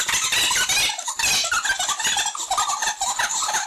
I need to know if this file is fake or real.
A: real